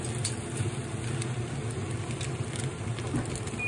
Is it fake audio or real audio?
real